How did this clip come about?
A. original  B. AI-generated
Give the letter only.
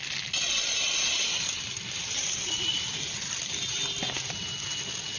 A